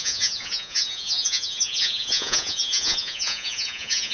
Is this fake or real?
fake